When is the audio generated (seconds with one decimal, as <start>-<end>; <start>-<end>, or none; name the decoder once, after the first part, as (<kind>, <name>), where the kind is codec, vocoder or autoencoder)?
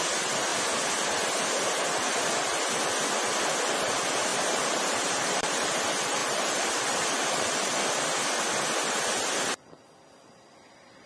4.3-5.7 (vocoder, BigVGAN v2); 6.2-8.0